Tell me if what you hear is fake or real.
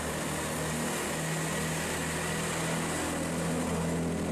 real